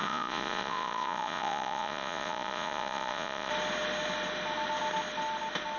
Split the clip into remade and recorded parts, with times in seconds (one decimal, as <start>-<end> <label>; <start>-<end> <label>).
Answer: 0.0-3.5 remade; 3.5-5.8 recorded